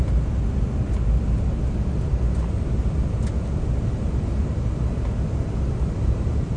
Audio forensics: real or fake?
real